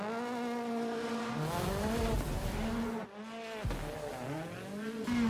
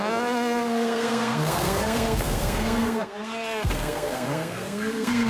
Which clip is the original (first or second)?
first